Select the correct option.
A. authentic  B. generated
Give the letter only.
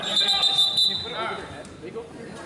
A